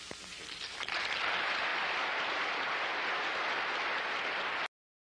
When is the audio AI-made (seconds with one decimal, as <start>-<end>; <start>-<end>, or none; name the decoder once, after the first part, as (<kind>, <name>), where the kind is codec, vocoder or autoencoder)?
none